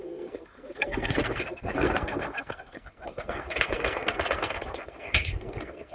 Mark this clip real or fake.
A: fake